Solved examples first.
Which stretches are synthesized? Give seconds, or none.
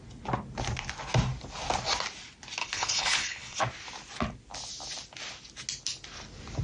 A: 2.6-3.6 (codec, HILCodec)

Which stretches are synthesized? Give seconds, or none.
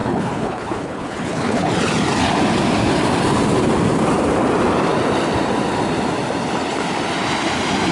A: 0.0-1.7 (codec, HILCodec)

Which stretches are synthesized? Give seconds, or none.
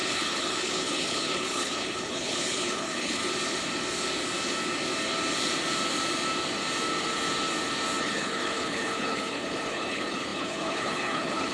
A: 0.0-3.2 (codec, HILCodec); 8.0-11.5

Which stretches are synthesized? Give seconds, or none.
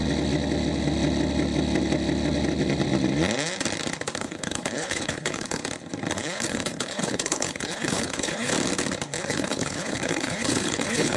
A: 4.2-5.6 (codec, HILCodec); 6.1-8.5; 9.2-11.2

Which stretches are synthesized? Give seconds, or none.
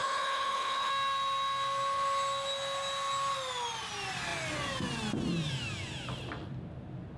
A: 0.0-0.9 (codec, HILCodec)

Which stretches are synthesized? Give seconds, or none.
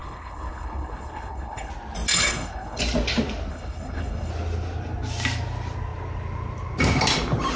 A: 0.0-1.7 (codec, HILCodec); 2.1-2.8; 3.5-4.3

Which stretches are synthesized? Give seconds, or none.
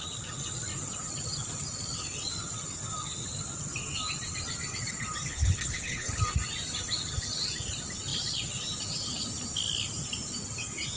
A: 5.3-6.2 (codec, HILCodec)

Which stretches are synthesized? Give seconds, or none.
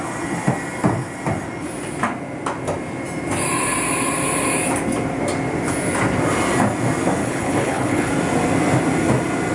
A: 7.2-8.1 (codec, HILCodec)